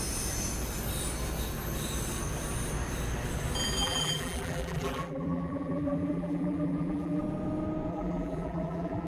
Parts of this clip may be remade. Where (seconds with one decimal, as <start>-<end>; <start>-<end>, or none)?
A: 3.8-7.2; 7.9-9.1